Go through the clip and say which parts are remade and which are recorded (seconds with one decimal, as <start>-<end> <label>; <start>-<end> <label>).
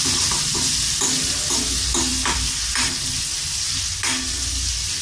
0.0-2.1 recorded; 2.1-2.9 remade; 2.9-5.0 recorded